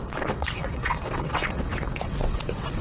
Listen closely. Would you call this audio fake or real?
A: fake